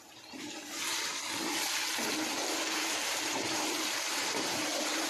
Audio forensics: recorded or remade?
remade